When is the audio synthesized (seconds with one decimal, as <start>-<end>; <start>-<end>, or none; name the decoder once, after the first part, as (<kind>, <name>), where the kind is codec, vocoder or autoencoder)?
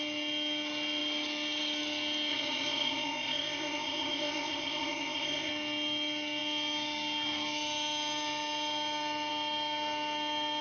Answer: 2.3-5.5 (codec, ZipCodec)